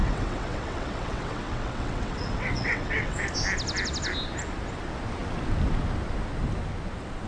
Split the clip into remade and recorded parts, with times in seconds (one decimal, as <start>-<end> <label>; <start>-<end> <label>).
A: 0.0-3.2 remade; 3.2-7.3 recorded